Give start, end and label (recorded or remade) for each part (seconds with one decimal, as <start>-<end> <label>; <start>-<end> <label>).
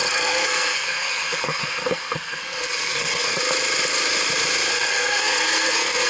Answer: 0.0-3.4 remade; 3.4-4.7 recorded; 4.7-6.1 remade